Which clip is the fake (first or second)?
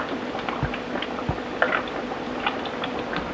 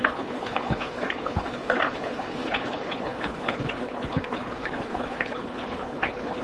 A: second